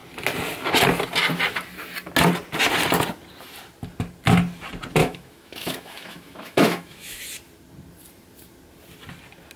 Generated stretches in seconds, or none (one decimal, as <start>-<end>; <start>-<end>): 5.0-7.2